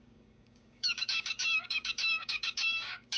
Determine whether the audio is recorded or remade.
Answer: remade